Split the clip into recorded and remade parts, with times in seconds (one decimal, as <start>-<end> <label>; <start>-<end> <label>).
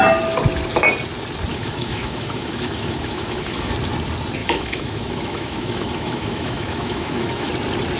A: 0.0-1.5 recorded; 1.5-3.7 remade; 3.7-4.4 recorded; 4.4-7.5 remade; 7.5-8.0 recorded